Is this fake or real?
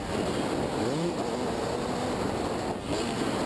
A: real